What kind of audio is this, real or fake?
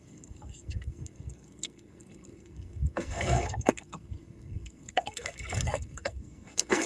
fake